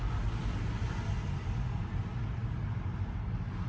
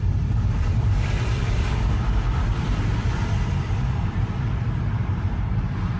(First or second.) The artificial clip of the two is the second